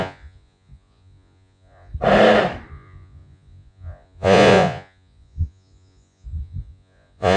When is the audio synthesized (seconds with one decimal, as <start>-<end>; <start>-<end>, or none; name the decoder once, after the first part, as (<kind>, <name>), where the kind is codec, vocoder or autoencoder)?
0.0-1.9 (vocoder, Vocos); 2.7-7.4